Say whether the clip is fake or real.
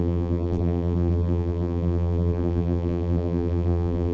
fake